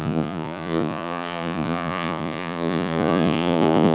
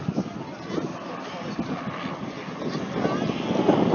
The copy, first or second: first